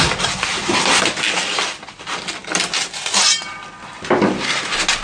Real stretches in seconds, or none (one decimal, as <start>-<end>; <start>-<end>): 0.0-5.0